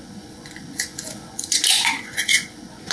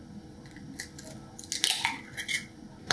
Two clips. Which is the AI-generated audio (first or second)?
first